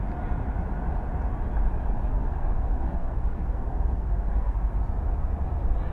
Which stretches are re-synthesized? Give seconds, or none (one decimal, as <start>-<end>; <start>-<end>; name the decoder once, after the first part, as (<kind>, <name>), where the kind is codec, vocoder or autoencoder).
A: 2.1-4.8 (codec, SNAC)